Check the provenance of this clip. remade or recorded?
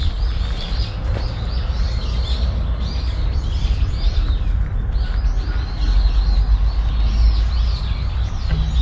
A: recorded